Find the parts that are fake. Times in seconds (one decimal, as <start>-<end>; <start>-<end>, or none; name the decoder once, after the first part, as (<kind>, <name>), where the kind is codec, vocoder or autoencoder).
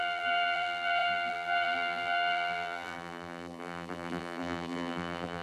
0.0-5.4 (vocoder, BigVGAN v2)